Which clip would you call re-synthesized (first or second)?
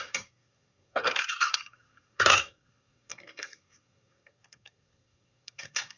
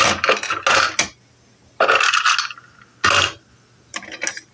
first